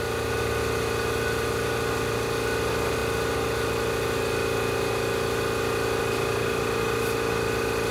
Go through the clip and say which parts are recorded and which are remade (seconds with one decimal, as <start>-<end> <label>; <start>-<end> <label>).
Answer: 0.0-7.9 recorded